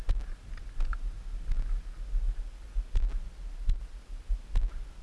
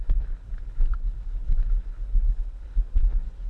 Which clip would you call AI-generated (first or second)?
second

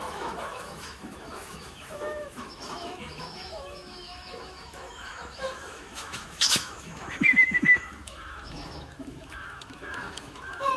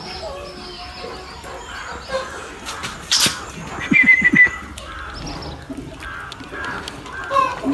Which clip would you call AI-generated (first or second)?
first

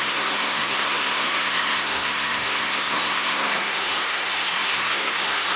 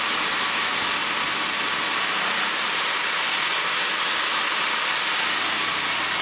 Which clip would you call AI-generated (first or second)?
first